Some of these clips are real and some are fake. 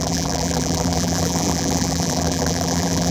fake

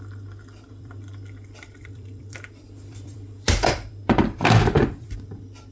fake